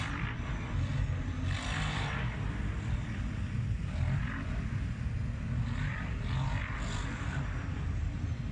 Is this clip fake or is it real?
real